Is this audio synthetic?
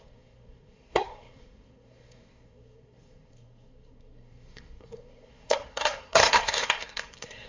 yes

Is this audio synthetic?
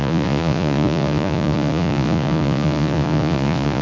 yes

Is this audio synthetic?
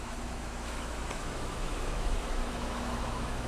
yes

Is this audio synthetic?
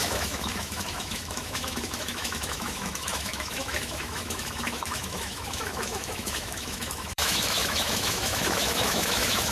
yes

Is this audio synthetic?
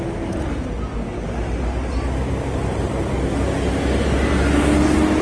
no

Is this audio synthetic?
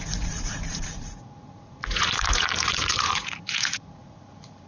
yes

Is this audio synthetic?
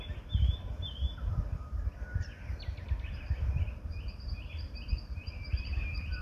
yes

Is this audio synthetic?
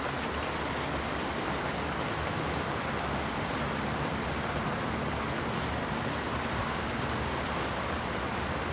no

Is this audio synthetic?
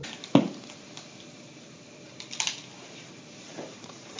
no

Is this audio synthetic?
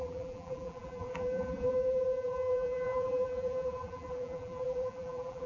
yes